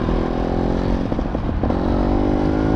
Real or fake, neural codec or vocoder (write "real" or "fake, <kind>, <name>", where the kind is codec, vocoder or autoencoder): real